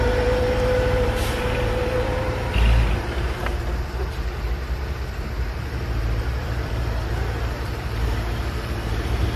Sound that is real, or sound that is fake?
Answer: fake